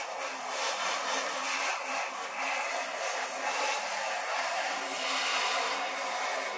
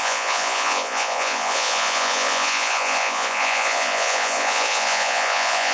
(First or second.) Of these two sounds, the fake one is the second